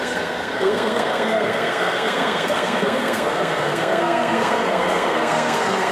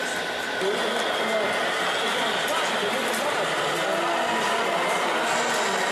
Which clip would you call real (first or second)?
second